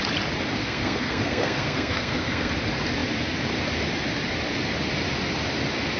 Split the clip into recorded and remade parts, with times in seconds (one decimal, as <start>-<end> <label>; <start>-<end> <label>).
0.0-0.6 recorded; 0.6-2.5 remade; 2.5-6.0 recorded